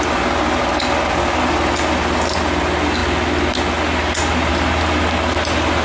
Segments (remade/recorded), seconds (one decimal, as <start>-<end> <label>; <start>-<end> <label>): 0.0-5.8 recorded